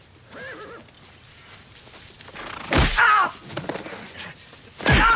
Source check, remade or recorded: recorded